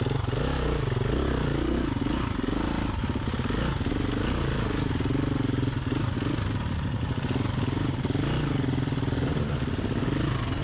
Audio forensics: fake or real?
real